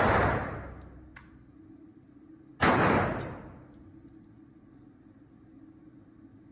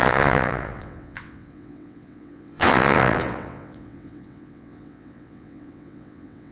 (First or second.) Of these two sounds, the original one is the first